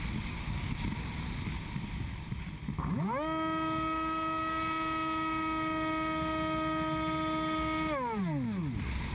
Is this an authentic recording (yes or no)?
yes